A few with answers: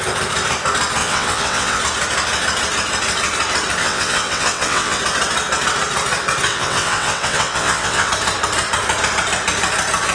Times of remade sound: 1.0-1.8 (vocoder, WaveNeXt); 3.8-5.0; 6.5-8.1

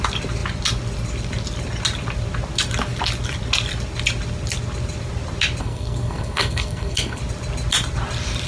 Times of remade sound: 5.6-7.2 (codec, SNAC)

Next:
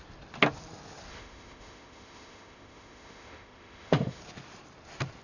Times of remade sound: 1.1-4.2 (autoencoder, DAC-VAE)

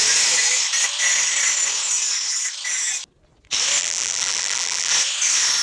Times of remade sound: 3.8-4.9 (vocoder, BigVGAN v2)